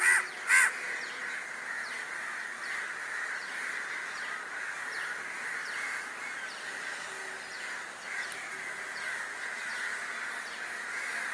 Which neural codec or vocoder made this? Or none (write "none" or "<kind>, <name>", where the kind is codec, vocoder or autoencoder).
none